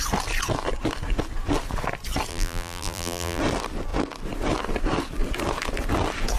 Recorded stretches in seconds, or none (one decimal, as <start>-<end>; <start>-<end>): 0.0-2.3; 3.4-6.4